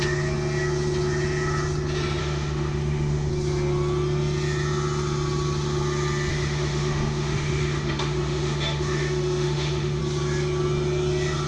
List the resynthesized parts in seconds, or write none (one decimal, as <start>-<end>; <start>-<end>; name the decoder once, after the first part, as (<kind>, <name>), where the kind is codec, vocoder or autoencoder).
2.2-3.3 (autoencoder, DAC-VAE); 6.3-10.0